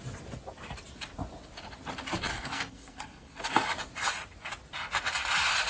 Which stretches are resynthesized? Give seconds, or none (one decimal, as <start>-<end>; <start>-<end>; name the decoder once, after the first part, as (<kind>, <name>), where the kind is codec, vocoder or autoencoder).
2.3-3.4 (codec, SNAC)